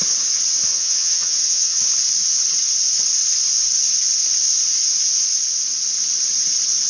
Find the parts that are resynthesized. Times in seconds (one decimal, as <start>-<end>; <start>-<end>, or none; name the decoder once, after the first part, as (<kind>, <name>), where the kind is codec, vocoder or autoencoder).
0.7-1.8 (vocoder, HiFi-GAN)